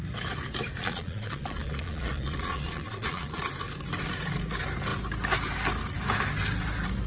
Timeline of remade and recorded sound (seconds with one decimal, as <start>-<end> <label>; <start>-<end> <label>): 0.0-0.8 recorded; 0.8-3.4 remade; 3.4-7.1 recorded